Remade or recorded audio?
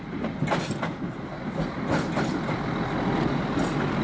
recorded